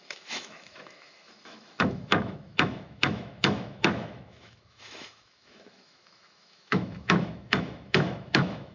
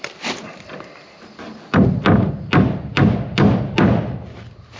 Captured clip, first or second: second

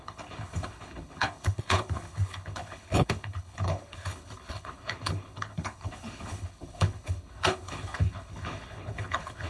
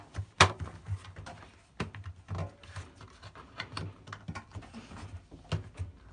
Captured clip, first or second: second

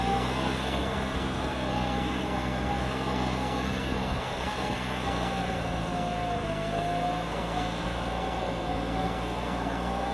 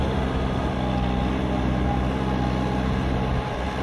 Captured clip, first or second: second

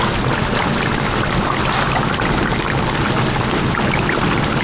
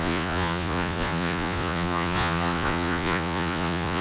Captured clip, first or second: first